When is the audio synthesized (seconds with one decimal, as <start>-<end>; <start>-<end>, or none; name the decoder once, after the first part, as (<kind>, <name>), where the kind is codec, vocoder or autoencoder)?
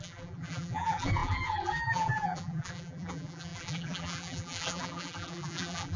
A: 0.0-6.0 (vocoder, BigVGAN v2)